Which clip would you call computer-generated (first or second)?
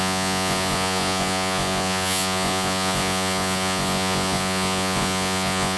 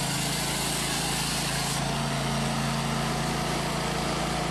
first